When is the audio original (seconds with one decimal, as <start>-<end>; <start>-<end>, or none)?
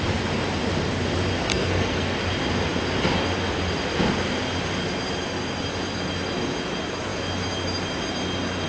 0.0-1.5; 2.2-8.7